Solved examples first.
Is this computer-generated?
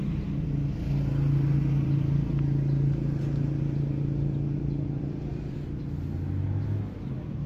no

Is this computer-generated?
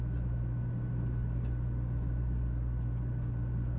no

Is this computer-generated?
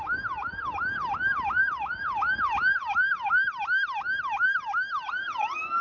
no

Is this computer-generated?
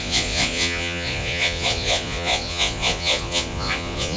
yes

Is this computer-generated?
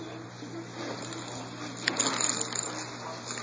no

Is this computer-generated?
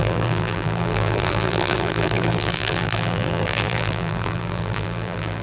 yes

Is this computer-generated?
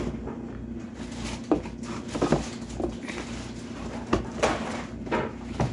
no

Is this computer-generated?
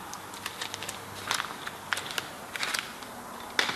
no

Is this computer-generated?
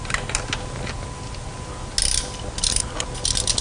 no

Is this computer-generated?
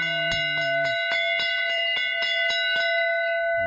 no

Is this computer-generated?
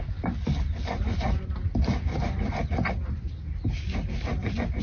no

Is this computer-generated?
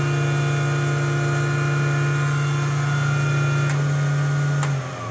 no